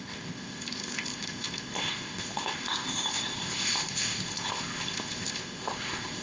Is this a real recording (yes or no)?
no